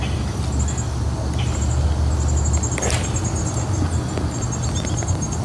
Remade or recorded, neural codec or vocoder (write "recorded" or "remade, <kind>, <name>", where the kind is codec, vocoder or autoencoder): recorded